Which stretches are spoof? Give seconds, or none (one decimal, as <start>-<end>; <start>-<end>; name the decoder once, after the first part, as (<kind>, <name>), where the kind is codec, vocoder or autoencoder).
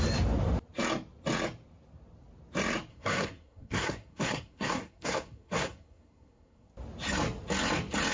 2.9-6.7 (codec, SNAC)